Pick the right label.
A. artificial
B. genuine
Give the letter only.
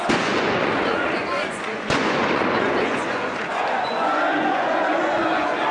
A